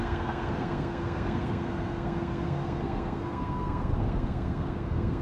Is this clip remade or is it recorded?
remade